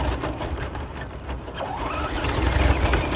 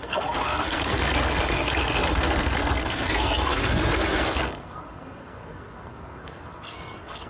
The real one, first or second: first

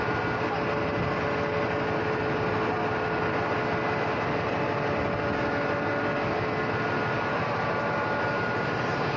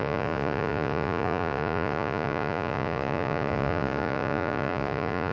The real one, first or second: first